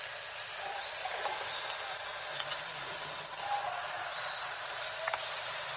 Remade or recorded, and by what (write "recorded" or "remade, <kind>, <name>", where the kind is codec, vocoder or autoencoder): recorded